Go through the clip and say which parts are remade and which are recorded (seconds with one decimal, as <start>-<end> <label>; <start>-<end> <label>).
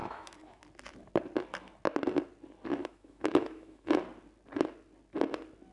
0.0-0.6 remade; 0.6-2.8 recorded; 2.8-3.9 remade; 3.9-5.7 recorded